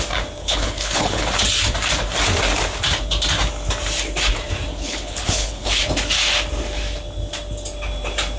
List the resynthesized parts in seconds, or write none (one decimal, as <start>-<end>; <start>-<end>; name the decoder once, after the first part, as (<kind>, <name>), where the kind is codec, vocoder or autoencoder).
0.4-1.3 (codec, HILCodec); 4.7-5.8

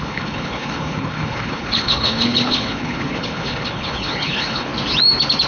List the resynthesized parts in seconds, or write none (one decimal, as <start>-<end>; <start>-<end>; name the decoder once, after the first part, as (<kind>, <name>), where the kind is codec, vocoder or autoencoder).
0.0-4.7 (codec, HILCodec)

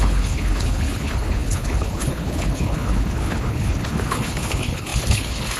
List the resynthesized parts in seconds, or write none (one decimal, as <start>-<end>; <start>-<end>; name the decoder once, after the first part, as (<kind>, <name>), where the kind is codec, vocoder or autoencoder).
0.0-5.6 (codec, HILCodec)

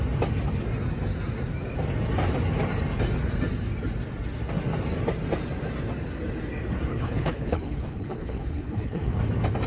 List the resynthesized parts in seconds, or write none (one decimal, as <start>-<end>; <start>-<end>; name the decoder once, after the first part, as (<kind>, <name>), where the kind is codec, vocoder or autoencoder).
6.9-9.2 (codec, HILCodec)

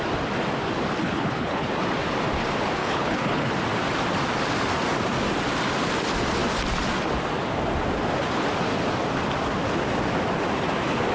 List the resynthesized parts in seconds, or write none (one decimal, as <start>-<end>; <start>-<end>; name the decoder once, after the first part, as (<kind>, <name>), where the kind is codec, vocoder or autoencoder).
1.0-1.7 (codec, HILCodec); 2.8-3.5

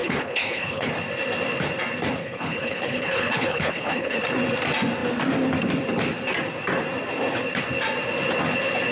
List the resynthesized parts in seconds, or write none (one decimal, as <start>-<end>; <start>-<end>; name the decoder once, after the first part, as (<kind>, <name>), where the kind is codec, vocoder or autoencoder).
0.0-0.9 (codec, HILCodec); 2.2-4.2

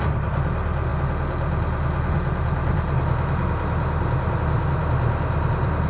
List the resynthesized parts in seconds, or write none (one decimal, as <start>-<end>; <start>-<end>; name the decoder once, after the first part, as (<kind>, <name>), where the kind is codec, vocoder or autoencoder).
none